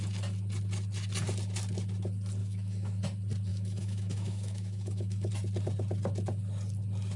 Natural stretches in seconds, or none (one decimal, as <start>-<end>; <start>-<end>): 0.0-2.4; 3.0-3.5; 5.3-7.2